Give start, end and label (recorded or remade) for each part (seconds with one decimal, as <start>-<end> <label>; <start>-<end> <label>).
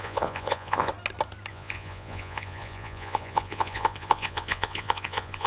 0.0-0.9 remade; 0.9-1.5 recorded; 1.5-5.5 remade